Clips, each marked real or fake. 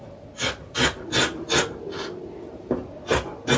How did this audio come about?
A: real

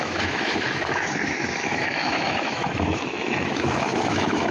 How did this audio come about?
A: fake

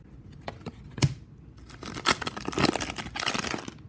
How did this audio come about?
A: real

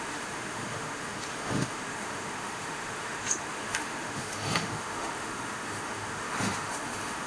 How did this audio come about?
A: fake